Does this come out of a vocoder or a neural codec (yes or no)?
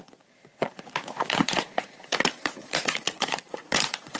yes